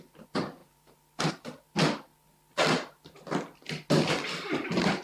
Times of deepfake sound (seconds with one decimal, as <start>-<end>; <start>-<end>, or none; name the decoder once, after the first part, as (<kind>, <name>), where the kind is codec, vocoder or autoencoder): 0.6-1.3 (vocoder, BigVGAN v2)